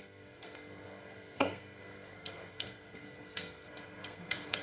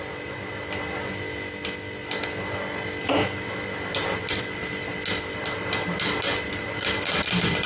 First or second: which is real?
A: second